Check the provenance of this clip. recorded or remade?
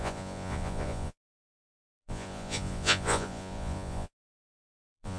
remade